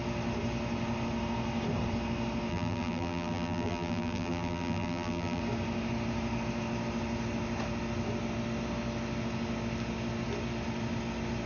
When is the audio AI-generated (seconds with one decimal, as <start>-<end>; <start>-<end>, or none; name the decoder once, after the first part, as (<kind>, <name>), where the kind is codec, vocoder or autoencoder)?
2.5-5.4 (vocoder, BigVGAN v2)